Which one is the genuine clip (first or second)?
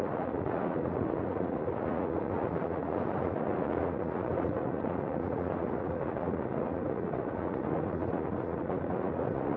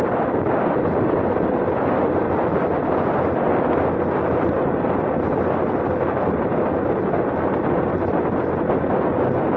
second